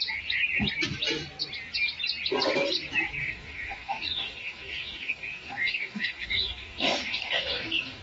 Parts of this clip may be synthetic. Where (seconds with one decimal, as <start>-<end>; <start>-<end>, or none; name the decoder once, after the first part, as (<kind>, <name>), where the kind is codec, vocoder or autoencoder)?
3.2-8.0 (codec, DAC)